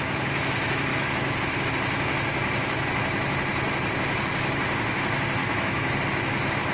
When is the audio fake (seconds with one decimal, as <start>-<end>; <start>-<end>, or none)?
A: 0.9-1.7; 5.4-6.0